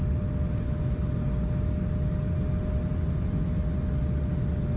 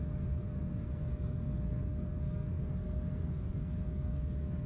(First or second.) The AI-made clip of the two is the second